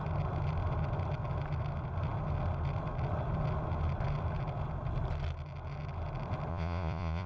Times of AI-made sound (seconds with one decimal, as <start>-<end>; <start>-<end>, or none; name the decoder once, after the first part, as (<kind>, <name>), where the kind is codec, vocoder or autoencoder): 6.5-7.3 (vocoder, Vocos)

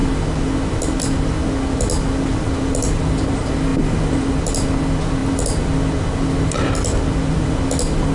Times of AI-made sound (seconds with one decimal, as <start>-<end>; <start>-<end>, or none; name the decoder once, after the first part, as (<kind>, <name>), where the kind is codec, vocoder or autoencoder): none

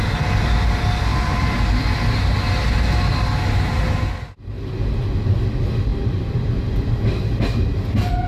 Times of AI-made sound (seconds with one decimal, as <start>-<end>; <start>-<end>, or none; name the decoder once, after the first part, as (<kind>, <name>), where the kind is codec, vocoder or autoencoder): 1.1-2.3 (vocoder, BigVGAN v2); 5.9-6.6

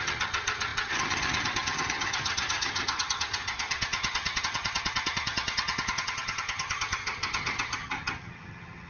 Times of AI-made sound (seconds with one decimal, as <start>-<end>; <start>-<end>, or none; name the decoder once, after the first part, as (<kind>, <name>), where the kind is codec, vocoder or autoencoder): 0.0-8.9 (vocoder, HiFi-GAN)

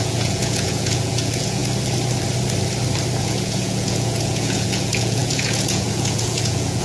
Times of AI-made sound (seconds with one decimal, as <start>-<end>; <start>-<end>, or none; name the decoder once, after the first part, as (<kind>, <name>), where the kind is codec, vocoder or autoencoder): 0.0-1.6 (vocoder, Vocos); 3.2-6.8